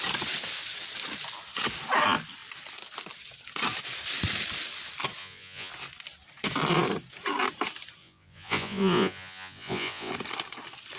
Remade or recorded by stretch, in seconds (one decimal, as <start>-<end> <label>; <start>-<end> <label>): 0.0-5.2 recorded; 5.2-5.7 remade; 5.7-8.0 recorded; 8.0-10.1 remade; 10.1-11.0 recorded